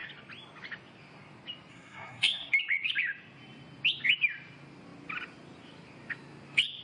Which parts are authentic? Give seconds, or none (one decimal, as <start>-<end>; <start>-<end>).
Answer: 0.0-1.7; 2.5-6.8